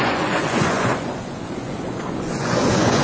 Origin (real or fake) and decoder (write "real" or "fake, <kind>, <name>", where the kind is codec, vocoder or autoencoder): fake, vocoder, Vocos